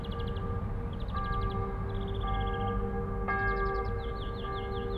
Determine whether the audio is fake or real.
real